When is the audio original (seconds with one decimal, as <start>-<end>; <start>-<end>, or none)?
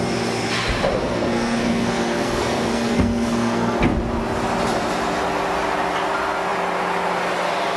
0.0-1.0; 3.8-7.8